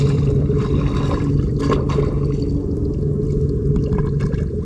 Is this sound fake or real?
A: real